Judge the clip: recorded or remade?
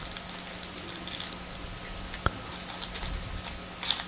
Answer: recorded